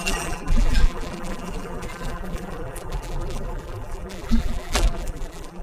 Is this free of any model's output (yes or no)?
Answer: no